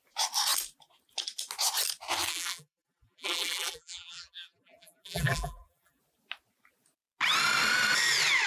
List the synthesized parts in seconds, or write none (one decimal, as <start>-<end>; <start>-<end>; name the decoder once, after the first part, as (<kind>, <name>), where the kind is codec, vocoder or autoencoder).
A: 2.3-6.0 (vocoder, BigVGAN v2)